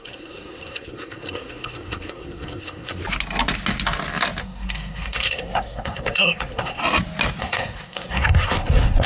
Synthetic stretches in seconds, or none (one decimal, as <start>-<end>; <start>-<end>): 0.0-3.0; 4.4-6.8; 7.4-9.1